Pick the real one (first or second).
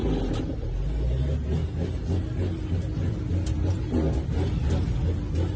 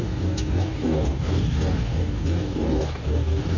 first